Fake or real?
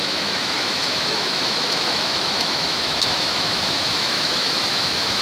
fake